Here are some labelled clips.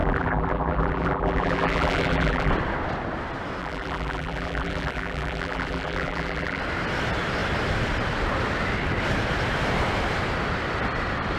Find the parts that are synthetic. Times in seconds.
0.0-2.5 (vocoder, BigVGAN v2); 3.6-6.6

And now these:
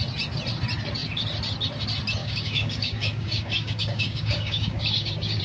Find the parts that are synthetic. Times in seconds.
2.2-5.4 (codec, DAC)

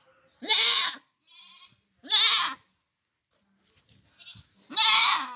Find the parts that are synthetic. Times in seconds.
none

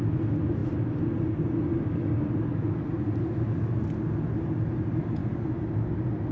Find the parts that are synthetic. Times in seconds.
none

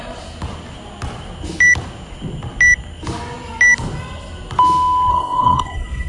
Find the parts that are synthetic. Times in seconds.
5.1-6.1 (codec, SNAC)